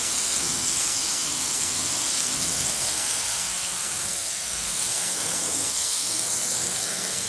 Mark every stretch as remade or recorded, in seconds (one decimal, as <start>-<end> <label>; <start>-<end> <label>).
0.0-7.3 remade